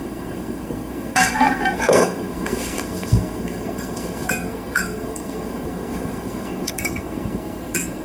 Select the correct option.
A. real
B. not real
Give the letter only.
B